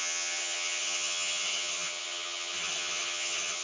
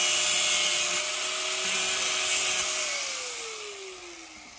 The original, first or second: second